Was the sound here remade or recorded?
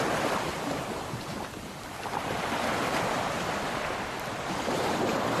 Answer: remade